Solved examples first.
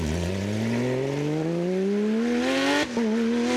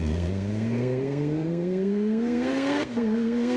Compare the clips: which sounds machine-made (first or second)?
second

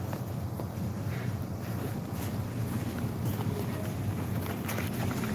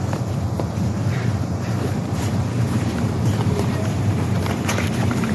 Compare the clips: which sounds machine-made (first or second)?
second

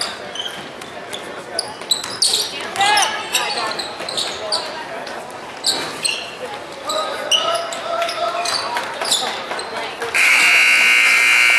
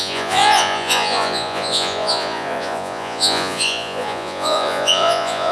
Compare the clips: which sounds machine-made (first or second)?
second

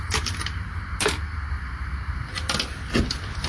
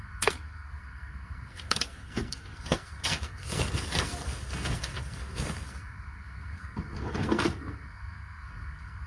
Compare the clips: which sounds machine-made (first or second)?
second